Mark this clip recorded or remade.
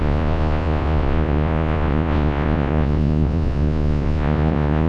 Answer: remade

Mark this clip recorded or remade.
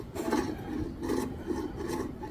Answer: recorded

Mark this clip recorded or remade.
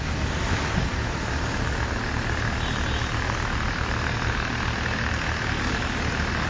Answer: recorded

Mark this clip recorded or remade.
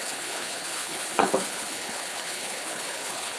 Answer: remade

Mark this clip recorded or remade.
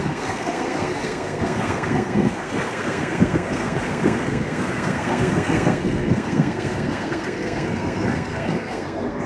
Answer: remade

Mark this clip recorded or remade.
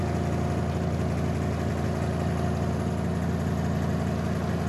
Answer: recorded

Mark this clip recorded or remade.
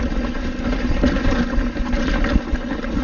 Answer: recorded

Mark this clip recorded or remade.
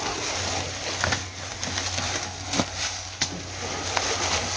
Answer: recorded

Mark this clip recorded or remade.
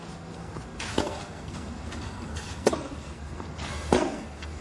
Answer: remade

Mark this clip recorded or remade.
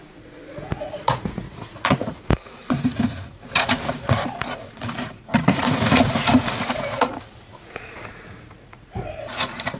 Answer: remade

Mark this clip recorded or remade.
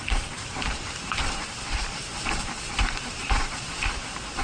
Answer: remade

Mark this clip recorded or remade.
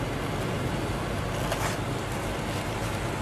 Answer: recorded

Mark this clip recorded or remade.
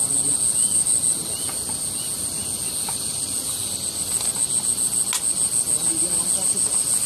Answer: recorded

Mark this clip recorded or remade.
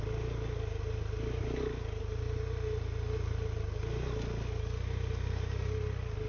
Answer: recorded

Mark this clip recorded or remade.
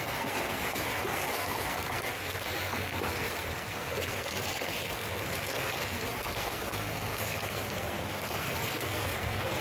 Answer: remade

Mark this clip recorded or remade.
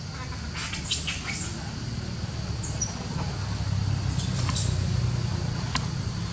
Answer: recorded